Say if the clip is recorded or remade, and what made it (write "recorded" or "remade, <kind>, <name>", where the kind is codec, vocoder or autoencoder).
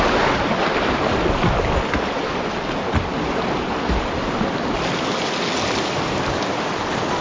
recorded